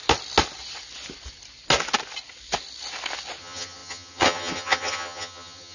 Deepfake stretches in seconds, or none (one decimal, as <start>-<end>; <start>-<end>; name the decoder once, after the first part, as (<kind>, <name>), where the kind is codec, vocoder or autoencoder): 3.4-5.7 (vocoder, HiFi-GAN)